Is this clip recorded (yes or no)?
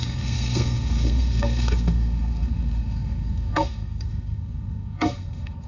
no